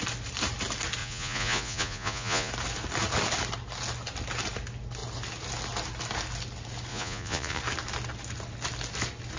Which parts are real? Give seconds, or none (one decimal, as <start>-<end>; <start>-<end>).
0.0-1.0; 2.5-6.9; 7.6-9.4